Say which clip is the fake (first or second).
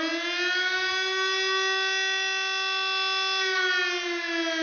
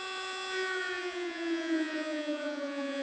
second